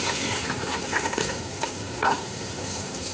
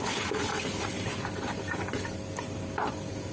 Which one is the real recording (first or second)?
second